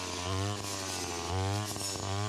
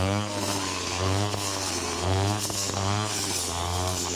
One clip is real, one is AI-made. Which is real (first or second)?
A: first